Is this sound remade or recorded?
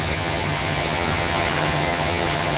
remade